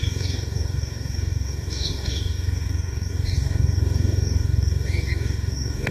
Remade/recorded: remade